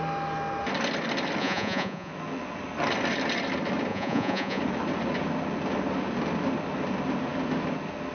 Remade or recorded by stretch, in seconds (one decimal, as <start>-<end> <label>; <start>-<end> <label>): 0.0-1.4 recorded; 1.4-2.1 remade; 2.1-3.9 recorded; 3.9-4.6 remade; 4.6-8.1 recorded